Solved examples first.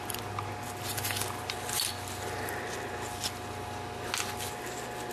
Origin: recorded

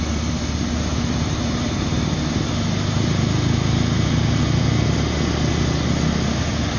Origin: recorded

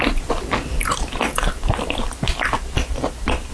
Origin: recorded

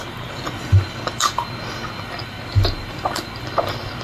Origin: recorded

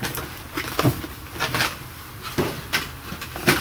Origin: recorded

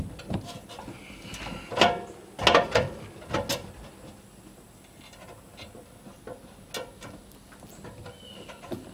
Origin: recorded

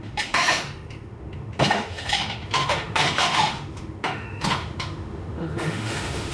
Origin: remade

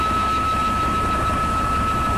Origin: remade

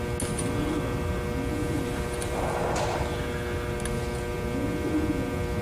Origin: recorded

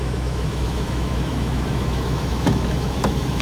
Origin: remade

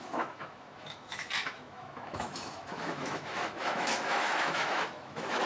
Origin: remade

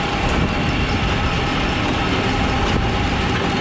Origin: recorded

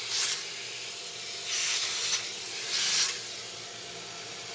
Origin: recorded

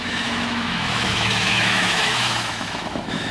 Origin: remade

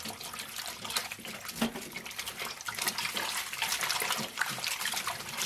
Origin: recorded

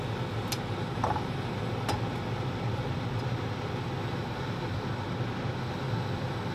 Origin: recorded